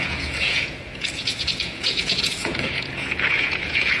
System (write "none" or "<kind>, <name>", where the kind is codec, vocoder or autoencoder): vocoder, Vocos